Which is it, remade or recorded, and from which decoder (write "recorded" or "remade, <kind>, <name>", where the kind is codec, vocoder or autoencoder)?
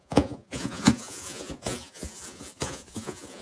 remade, vocoder, Vocos